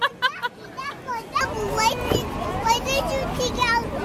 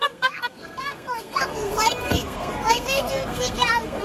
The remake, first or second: second